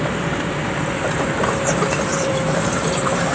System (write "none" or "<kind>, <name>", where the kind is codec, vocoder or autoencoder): vocoder, BigVGAN v2